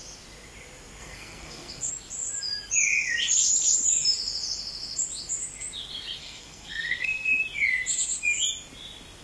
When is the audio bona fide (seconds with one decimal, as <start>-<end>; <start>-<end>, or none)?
0.0-1.0; 1.9-6.2; 7.4-9.2